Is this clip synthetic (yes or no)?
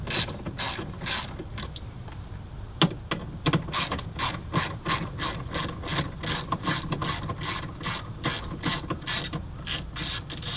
no